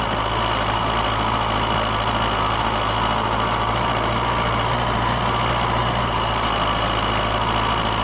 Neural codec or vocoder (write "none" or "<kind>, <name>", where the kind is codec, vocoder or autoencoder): none